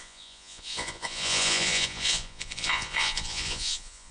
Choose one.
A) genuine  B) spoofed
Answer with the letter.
B